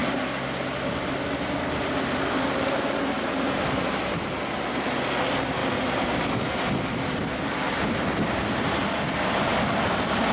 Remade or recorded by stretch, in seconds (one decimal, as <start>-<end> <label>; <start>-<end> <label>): 0.0-10.3 recorded